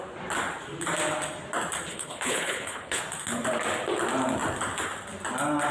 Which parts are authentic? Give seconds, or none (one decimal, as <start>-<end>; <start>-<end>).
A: 0.0-1.9; 3.0-5.7

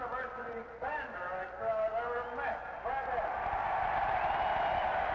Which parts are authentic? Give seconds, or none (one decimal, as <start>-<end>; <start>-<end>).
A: 0.0-5.1

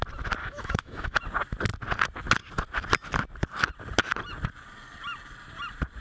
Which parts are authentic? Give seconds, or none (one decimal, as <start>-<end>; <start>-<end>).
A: 0.0-0.4; 1.2-6.0

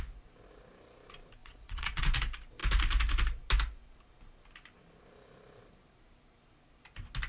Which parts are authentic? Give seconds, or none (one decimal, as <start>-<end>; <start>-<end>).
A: 0.0-1.4; 2.0-7.3